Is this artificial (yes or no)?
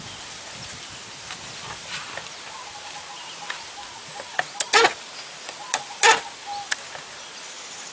no